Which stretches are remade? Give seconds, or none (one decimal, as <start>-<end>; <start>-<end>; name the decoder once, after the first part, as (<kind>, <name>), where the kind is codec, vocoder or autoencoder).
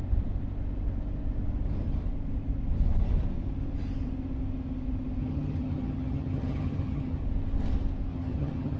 5.2-7.2 (vocoder, HiFi-GAN); 8.1-8.8